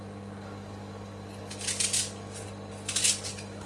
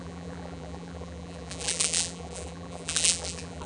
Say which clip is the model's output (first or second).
second